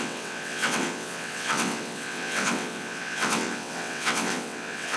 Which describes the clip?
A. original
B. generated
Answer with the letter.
B